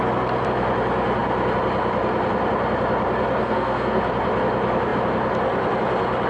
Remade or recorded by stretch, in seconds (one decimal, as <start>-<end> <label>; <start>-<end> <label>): 0.0-3.4 recorded; 3.4-4.0 remade; 4.0-6.3 recorded